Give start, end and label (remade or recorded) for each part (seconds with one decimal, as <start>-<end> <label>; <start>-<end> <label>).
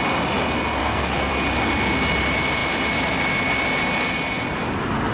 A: 0.0-0.8 recorded; 0.8-1.3 remade; 1.3-5.1 recorded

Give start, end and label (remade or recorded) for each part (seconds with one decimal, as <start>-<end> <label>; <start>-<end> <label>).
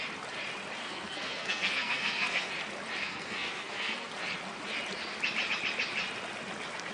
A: 0.0-0.8 recorded; 0.8-2.5 remade; 2.5-3.0 recorded; 3.0-4.1 remade; 4.1-6.9 recorded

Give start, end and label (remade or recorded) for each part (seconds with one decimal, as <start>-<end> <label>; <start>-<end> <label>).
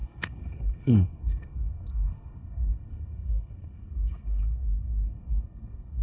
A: 0.0-6.0 remade